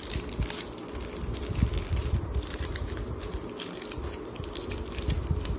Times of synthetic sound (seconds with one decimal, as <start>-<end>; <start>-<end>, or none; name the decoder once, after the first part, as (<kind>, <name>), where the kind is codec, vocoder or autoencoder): 2.0-3.3 (vocoder, BigVGAN v2)